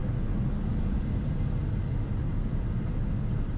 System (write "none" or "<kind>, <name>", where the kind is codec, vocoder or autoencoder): none